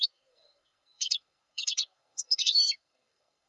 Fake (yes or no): yes